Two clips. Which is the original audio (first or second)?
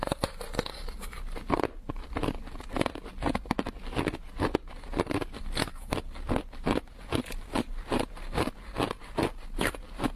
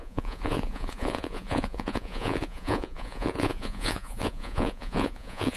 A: first